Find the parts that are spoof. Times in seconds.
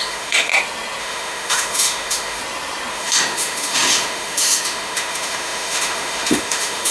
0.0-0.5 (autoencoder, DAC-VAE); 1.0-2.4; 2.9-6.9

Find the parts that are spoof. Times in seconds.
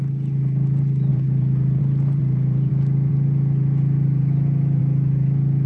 1.1-1.8 (vocoder, Vocos); 2.2-2.7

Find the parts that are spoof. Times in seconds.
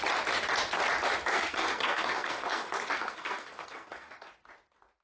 1.3-4.3 (codec, SNAC)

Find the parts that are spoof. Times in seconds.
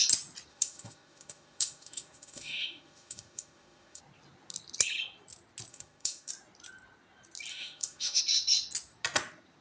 0.5-4.0 (autoencoder, DAC-VAE); 5.7-6.3; 7.5-8.2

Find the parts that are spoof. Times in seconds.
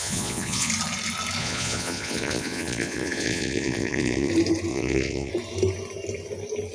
0.0-0.7 (vocoder, Vocos); 1.4-4.3; 4.7-5.3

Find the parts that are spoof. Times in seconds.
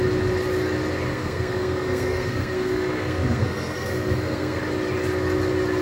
1.1-4.6 (codec, SNAC)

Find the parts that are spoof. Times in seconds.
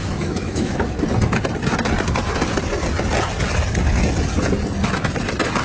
0.0-1.0 (autoencoder, DAC-VAE)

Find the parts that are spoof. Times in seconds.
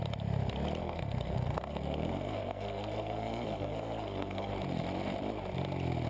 0.8-4.5 (codec, SNAC)